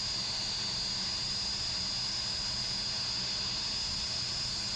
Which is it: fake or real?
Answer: real